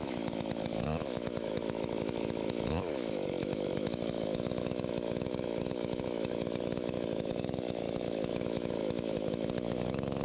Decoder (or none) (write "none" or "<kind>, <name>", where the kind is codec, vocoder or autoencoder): autoencoder, DAC-VAE